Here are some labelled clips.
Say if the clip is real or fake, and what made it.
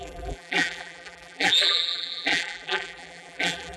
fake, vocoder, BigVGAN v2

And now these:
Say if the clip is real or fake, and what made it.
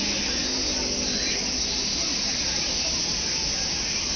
real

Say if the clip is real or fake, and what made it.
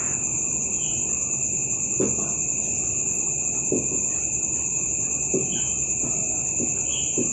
real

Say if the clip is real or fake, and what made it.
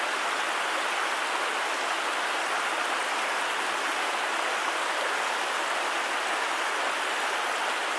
real